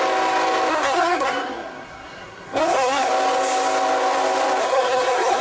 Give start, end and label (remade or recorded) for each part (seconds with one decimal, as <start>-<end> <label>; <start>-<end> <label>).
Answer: 0.0-0.7 recorded; 0.7-3.1 remade; 3.1-4.6 recorded; 4.6-5.4 remade